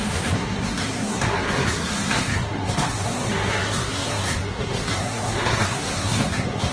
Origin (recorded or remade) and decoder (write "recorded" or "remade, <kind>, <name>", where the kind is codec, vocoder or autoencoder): remade, codec, SNAC